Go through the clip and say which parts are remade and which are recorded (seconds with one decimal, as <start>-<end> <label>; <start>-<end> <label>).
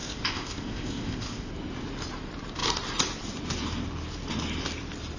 0.0-1.5 remade; 1.5-5.2 recorded